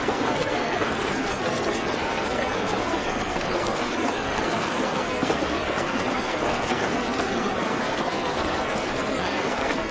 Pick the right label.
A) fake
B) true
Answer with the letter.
A